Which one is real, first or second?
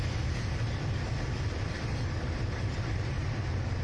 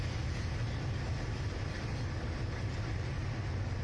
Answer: second